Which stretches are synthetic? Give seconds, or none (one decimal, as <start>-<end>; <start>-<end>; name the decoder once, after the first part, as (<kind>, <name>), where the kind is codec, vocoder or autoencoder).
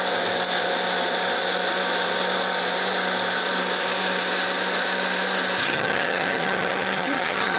5.6-7.6 (vocoder, HiFi-GAN)